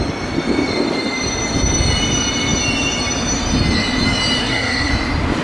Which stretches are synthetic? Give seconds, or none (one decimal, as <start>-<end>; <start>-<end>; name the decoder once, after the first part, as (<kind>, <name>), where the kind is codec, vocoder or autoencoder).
4.4-4.9 (codec, SNAC)